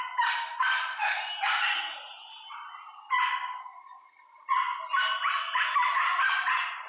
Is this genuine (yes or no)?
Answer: yes